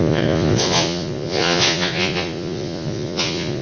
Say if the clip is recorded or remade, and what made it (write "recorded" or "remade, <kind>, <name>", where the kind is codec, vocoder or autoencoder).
remade, vocoder, Vocos